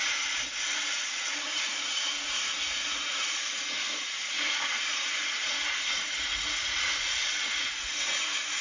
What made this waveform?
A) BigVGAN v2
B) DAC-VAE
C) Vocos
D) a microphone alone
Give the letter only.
C